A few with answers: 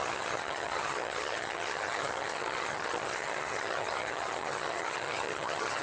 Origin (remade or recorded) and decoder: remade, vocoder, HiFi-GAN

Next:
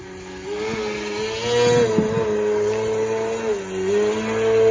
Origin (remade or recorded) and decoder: recorded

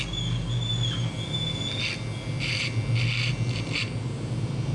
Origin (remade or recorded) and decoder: recorded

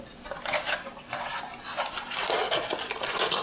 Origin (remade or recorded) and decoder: recorded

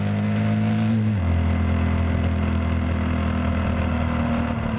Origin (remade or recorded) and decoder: recorded